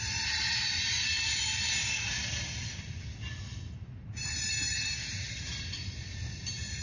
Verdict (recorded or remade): recorded